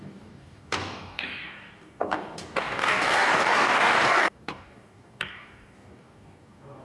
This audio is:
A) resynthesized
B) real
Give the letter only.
A